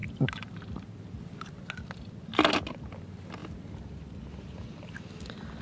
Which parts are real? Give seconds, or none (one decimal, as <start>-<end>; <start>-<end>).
0.0-5.6